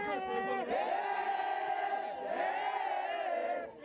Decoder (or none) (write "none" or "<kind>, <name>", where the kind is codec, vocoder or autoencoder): none